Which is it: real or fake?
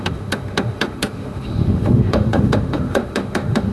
fake